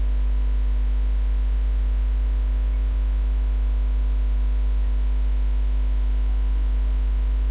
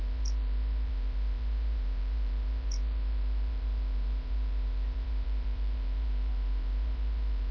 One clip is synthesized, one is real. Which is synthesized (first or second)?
second